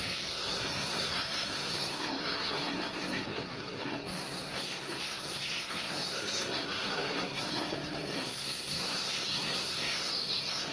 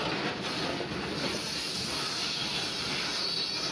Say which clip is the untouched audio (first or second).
second